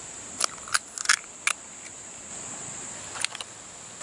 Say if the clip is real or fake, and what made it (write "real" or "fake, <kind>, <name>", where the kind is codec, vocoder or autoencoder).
real